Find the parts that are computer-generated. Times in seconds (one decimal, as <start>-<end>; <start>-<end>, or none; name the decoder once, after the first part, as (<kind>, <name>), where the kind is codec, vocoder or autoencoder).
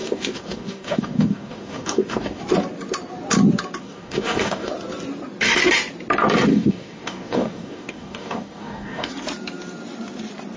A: 0.0-2.4 (codec, DAC); 3.8-4.7; 6.5-9.1